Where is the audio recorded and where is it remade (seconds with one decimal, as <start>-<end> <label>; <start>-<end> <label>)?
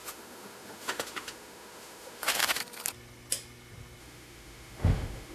0.0-2.6 remade; 2.6-4.0 recorded; 4.0-5.3 remade